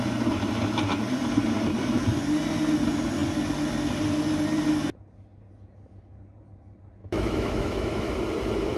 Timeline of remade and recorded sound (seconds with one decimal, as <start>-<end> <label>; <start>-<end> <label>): 0.0-7.0 recorded; 7.0-8.1 remade; 8.1-8.8 recorded